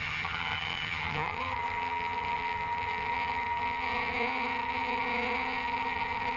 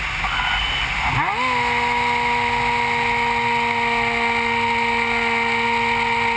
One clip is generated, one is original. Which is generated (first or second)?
first